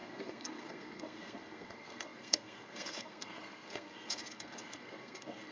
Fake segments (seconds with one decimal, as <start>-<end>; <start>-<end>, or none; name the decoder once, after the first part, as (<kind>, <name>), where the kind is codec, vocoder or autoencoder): 0.0-5.5 (codec, SNAC)